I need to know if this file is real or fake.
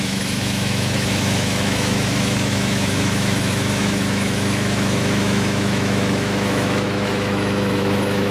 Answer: fake